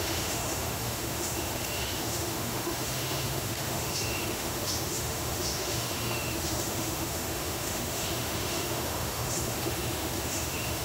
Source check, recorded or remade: remade